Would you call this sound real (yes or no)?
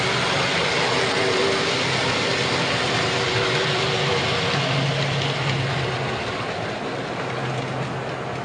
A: yes